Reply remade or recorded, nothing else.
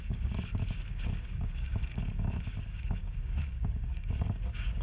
remade